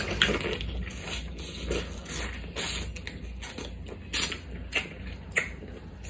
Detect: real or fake real